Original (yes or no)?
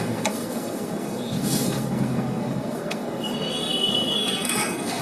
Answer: no